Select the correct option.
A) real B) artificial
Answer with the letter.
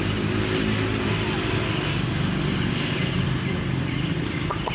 A